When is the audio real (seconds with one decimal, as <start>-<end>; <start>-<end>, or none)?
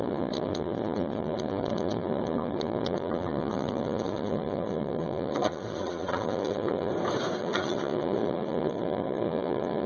6.9-7.4